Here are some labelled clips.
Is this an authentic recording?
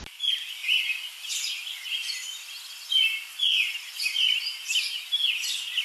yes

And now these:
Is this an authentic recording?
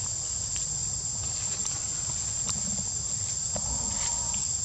yes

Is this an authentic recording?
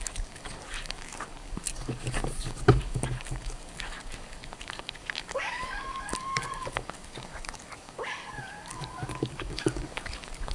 no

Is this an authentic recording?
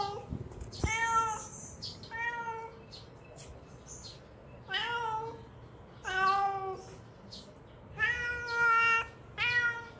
yes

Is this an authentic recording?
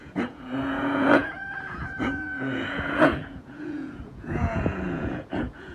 no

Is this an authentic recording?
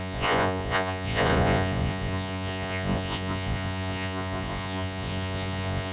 no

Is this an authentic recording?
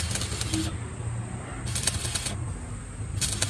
yes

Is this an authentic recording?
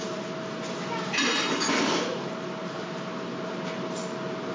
yes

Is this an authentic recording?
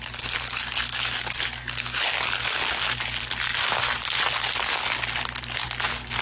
yes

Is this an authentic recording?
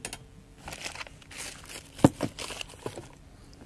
yes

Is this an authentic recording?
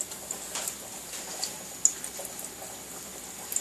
yes